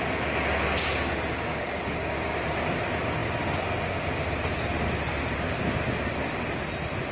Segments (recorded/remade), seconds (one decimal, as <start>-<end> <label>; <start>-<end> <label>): 0.0-1.5 recorded; 1.5-2.4 remade; 2.4-7.1 recorded